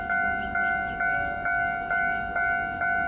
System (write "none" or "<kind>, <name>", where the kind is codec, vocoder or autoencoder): none